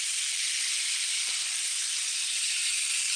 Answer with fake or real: fake